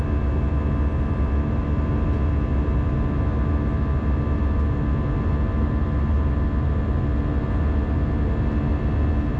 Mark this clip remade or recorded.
recorded